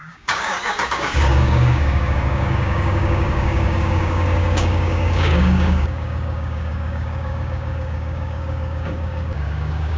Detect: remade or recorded remade